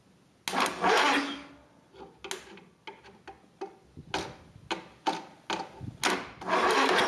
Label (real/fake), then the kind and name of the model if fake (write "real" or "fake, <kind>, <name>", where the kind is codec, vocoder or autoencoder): real